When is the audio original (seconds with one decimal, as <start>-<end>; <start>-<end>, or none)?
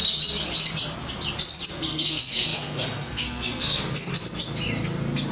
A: 0.0-1.7; 4.1-5.3